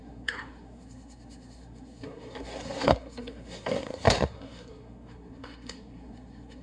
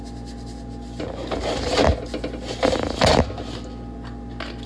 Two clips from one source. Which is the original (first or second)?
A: second